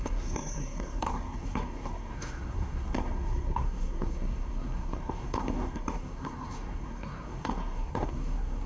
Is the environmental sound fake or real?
fake